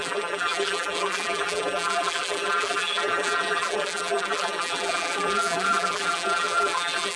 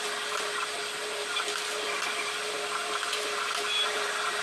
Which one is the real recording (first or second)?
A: second